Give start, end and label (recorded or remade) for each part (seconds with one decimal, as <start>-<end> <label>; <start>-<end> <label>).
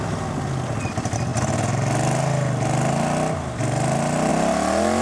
0.0-5.0 recorded